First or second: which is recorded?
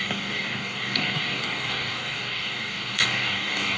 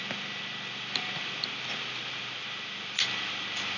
second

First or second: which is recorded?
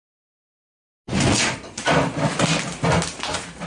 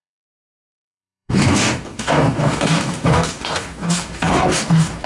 first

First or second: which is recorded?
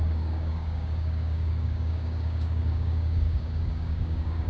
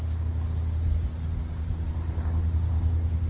second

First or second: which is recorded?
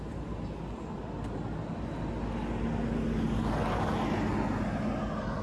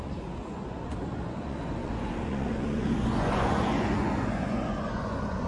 first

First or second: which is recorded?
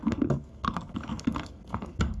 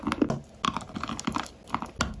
second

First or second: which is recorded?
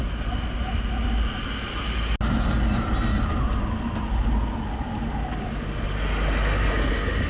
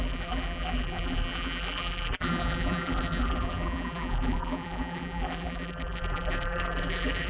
first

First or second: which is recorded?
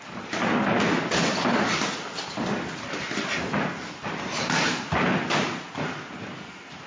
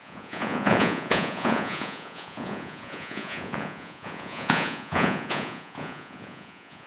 first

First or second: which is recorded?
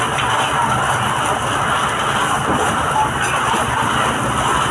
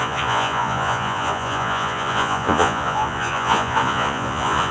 first